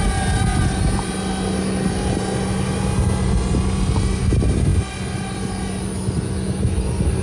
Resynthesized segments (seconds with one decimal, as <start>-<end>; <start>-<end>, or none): none